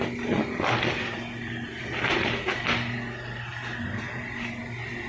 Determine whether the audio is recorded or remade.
recorded